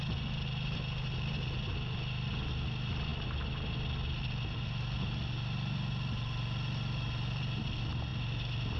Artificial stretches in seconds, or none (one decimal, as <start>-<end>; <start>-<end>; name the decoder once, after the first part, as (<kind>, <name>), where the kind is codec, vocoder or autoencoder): none